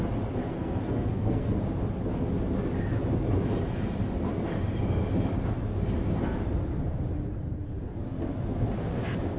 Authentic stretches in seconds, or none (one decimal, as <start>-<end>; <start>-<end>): 0.0-0.5; 1.6-9.4